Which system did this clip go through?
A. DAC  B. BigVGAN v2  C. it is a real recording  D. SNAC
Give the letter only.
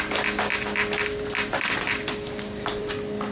B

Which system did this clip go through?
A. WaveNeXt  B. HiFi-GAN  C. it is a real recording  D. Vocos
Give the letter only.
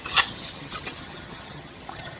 B